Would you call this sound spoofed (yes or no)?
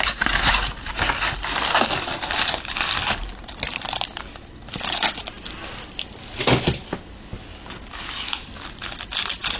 no